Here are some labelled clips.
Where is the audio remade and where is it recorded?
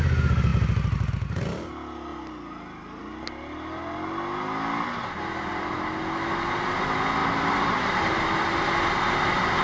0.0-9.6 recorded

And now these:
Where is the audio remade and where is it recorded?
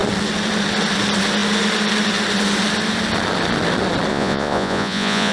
0.0-4.1 recorded; 4.1-5.3 remade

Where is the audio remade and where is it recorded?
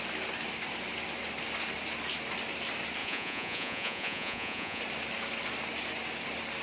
0.0-3.0 recorded; 3.0-4.8 remade; 4.8-6.6 recorded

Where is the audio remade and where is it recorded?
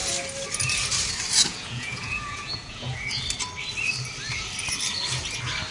0.0-1.5 recorded; 1.5-3.2 remade; 3.2-5.7 recorded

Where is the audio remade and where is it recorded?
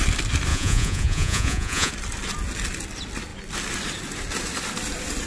0.0-0.5 recorded; 0.5-1.9 remade; 1.9-5.3 recorded